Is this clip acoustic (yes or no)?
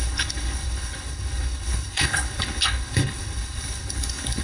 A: no